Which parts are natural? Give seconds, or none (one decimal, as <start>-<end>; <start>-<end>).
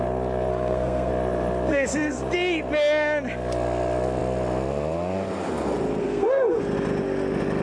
0.0-0.5; 1.1-1.7; 2.2-6.0; 6.6-7.6